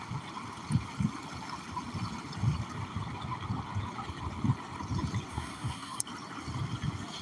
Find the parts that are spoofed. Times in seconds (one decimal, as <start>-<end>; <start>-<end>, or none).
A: 5.3-6.0